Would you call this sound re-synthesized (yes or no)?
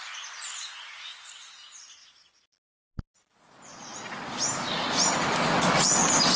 no